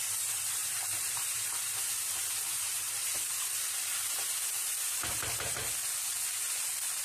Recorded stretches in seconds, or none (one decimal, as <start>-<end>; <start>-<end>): 5.8-6.5